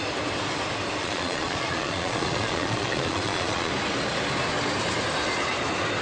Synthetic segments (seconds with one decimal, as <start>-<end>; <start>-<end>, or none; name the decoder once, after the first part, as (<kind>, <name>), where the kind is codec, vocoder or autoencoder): 1.0-3.7 (vocoder, Vocos)